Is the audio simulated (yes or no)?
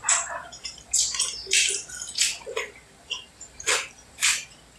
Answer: yes